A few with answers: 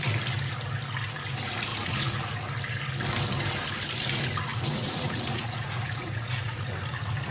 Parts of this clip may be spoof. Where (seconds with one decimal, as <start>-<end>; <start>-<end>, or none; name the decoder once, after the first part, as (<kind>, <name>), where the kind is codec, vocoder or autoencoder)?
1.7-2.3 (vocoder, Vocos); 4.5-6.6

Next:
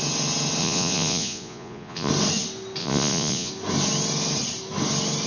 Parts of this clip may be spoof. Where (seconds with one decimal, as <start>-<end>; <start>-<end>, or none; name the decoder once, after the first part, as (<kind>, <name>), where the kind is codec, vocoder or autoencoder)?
0.6-2.1 (vocoder, Vocos); 2.8-3.5

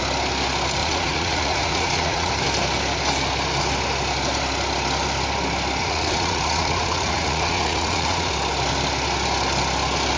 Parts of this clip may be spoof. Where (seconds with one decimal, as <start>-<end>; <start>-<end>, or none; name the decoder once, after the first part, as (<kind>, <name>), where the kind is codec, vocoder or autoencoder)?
0.8-2.3 (vocoder, Vocos); 5.8-8.3

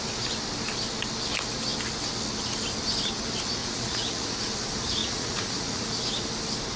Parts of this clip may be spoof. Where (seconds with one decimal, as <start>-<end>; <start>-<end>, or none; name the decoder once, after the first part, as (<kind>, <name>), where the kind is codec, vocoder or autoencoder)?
3.6-4.4 (vocoder, Vocos); 5.0-5.9